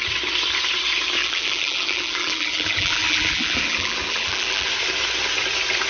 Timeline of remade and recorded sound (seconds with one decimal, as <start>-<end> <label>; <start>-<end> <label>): 0.0-1.2 recorded; 1.2-4.7 remade; 4.7-5.9 recorded